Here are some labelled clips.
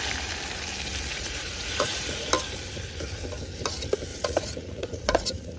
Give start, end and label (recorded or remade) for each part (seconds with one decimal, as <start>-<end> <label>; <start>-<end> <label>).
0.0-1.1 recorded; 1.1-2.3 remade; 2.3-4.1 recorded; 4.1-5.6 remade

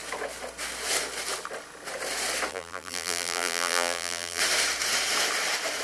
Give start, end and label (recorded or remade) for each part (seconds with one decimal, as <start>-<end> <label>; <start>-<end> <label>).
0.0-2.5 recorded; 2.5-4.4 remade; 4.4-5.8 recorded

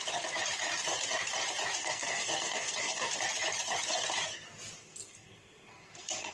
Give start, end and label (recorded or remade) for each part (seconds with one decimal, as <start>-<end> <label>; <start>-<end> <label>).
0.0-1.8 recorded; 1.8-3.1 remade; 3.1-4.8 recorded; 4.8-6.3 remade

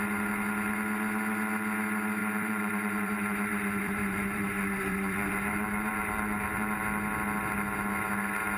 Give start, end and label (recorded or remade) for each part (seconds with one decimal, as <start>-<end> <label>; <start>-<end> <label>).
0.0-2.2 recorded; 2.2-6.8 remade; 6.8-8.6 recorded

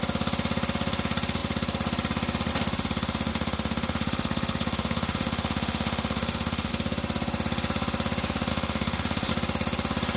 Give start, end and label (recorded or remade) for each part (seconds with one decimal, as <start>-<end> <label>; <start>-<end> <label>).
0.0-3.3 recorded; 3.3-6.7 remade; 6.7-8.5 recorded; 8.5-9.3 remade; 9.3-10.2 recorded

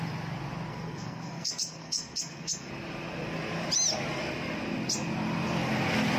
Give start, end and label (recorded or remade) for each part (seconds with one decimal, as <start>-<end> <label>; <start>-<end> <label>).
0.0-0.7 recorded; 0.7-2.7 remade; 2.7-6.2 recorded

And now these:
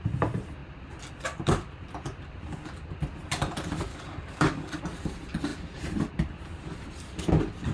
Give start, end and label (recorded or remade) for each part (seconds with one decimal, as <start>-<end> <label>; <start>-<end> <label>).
0.0-3.9 recorded; 3.9-4.8 remade; 4.8-7.7 recorded